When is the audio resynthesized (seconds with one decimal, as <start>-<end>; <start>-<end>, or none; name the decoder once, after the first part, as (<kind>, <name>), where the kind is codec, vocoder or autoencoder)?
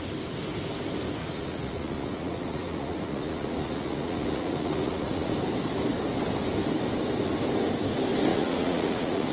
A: 1.2-5.3 (vocoder, Vocos); 8.3-9.3